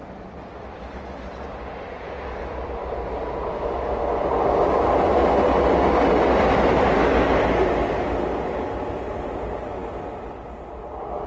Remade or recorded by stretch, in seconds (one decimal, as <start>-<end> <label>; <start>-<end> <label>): 0.0-0.5 recorded; 0.5-3.2 remade; 3.2-11.3 recorded